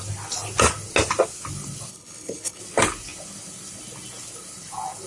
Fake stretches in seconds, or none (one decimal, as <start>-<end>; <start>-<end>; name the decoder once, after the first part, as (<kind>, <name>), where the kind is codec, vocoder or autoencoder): 1.9-2.6 (codec, HILCodec)